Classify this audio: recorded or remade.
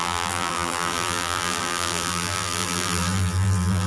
remade